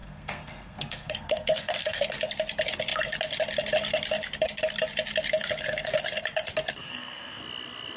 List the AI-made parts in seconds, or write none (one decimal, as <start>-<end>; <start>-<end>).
0.0-2.0; 6.8-7.4